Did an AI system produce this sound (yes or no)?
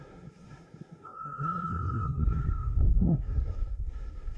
yes